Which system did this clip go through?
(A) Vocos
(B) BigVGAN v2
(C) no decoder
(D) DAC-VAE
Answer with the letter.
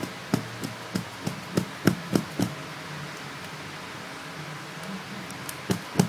C